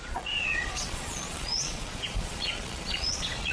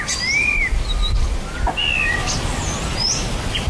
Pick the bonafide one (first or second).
second